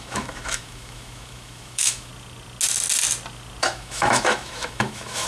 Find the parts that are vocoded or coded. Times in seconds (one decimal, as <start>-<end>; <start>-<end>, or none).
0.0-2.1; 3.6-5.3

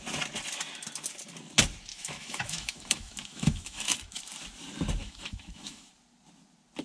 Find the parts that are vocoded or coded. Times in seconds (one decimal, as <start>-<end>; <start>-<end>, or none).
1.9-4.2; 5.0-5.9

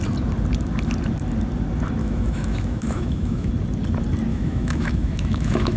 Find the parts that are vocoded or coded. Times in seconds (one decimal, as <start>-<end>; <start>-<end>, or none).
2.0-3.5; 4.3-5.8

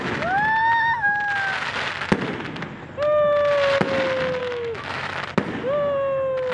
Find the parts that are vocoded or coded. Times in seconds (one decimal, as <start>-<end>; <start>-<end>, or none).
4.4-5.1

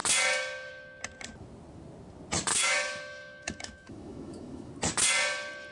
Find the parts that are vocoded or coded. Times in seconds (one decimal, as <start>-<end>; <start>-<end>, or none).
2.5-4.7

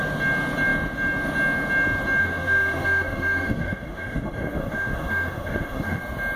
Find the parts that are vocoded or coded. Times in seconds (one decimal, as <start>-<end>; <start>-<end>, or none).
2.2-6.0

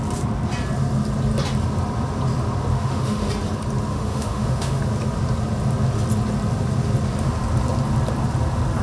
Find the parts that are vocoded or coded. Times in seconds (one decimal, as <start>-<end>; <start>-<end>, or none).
2.7-3.3; 3.9-4.8